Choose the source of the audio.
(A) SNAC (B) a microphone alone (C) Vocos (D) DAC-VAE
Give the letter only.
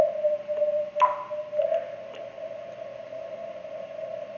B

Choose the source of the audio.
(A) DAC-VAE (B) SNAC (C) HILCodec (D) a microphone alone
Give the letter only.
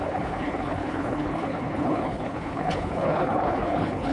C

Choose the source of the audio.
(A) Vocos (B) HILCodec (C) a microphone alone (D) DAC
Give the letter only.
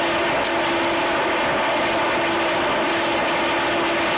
C